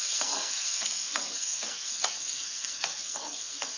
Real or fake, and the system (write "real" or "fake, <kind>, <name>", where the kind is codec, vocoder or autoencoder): fake, codec, SNAC